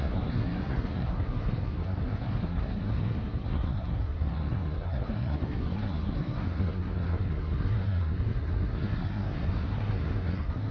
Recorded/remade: remade